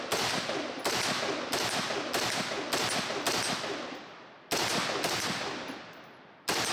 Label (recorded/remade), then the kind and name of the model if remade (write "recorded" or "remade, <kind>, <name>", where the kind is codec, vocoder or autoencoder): recorded